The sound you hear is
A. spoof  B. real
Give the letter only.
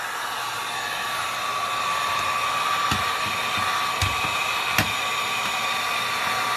B